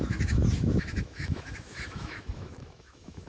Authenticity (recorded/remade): remade